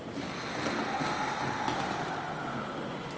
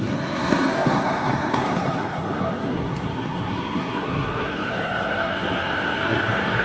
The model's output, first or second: second